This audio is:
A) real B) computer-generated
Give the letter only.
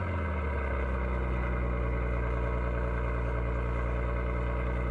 A